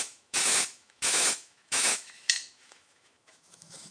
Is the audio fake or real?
fake